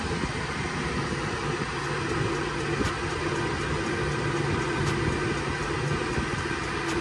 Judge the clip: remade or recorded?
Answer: recorded